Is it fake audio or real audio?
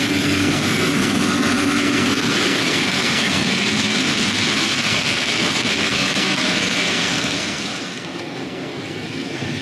fake